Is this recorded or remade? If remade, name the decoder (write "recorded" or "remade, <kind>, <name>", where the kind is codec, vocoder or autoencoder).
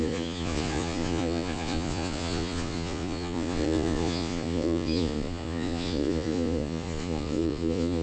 remade, vocoder, Vocos